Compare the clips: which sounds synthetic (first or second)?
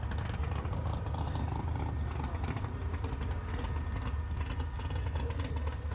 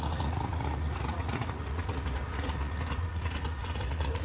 second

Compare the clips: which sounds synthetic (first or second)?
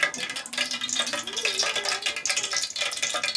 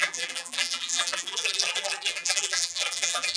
second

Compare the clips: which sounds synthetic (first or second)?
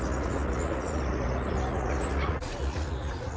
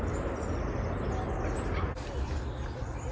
first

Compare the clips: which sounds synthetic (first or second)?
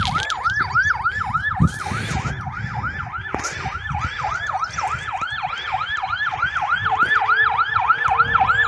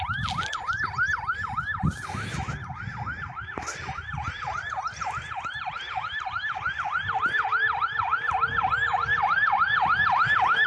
second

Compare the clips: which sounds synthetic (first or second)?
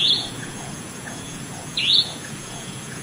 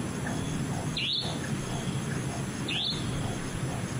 first